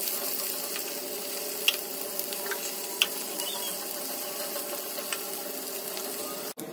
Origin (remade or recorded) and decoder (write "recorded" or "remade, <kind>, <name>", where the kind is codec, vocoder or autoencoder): recorded